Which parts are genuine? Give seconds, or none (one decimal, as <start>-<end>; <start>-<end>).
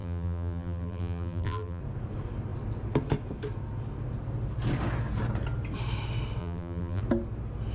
1.8-6.4; 7.0-7.7